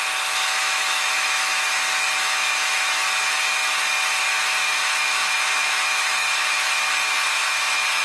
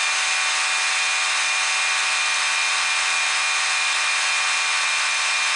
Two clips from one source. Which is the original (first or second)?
second